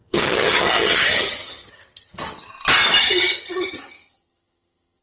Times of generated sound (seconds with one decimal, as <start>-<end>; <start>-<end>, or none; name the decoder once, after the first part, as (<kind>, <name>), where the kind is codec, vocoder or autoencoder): 0.0-2.5 (vocoder, HiFi-GAN); 3.0-5.0